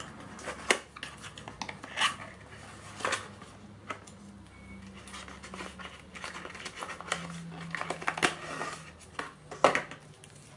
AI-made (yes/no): no